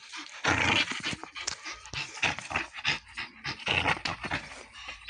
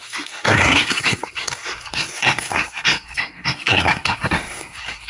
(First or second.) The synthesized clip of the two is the second